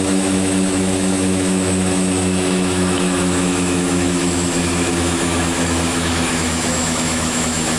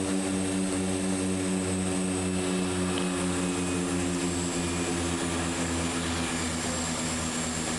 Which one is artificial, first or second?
first